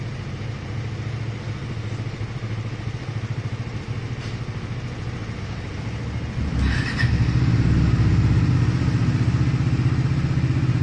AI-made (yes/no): no